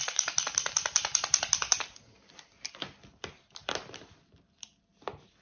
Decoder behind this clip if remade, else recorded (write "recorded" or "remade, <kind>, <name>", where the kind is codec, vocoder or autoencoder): recorded